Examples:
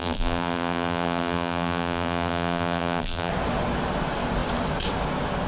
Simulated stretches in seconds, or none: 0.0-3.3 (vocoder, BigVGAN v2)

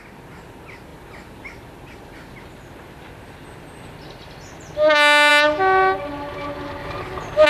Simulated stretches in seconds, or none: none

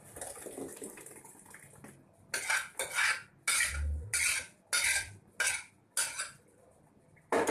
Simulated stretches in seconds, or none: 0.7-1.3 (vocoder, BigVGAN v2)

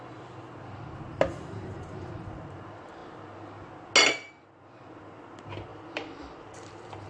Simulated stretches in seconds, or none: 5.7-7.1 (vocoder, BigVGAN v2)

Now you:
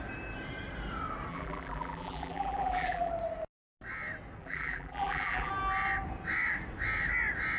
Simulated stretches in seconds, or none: 1.3-3.1 (vocoder, BigVGAN v2); 4.4-5.5

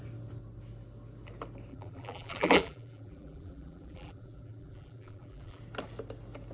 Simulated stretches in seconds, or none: 1.7-5.6 (vocoder, BigVGAN v2)